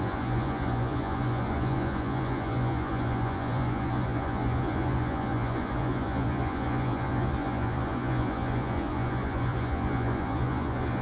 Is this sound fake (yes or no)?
yes